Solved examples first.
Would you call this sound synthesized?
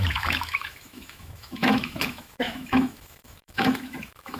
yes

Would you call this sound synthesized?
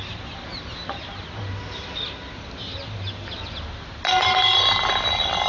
no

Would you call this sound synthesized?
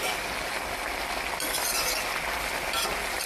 no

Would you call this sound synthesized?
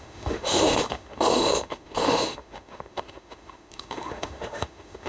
yes